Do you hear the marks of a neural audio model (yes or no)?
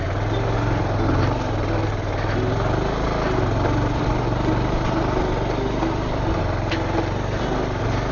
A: no